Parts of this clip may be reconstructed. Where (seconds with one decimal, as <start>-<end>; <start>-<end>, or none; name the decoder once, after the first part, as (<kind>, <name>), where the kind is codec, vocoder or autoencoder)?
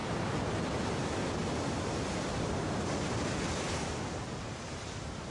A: none